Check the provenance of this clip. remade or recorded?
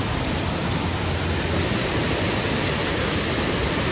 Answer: recorded